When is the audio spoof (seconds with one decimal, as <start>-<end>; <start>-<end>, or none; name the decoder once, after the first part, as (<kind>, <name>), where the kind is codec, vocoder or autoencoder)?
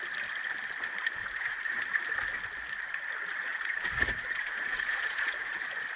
1.2-1.8 (vocoder, Vocos); 3.5-5.6